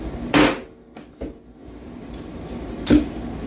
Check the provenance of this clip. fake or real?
real